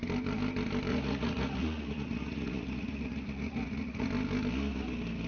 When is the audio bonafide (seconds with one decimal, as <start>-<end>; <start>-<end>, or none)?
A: 0.0-0.9; 4.1-5.3